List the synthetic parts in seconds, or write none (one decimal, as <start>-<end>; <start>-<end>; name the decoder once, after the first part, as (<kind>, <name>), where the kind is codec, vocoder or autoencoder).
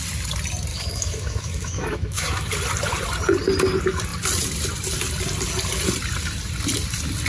0.7-2.5 (autoencoder, DAC-VAE)